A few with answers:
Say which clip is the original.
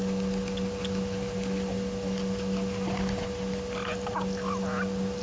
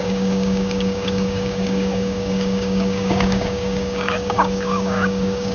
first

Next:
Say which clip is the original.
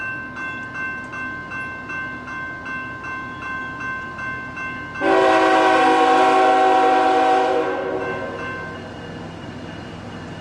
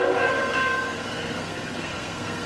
first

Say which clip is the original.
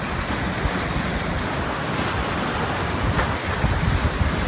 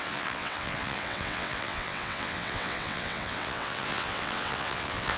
first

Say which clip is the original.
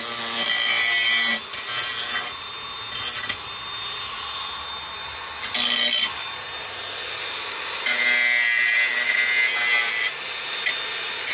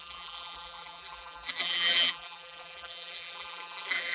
first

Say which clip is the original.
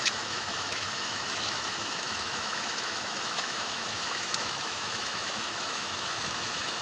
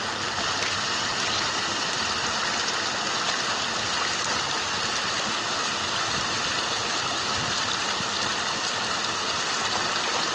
second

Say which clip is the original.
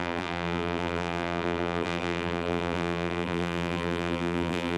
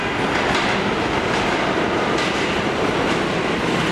second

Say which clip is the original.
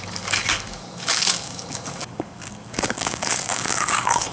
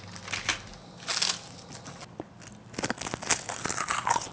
second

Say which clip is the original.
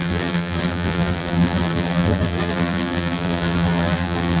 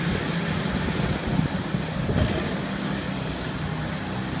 second